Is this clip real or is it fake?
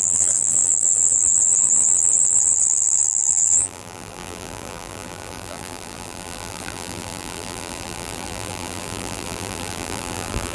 fake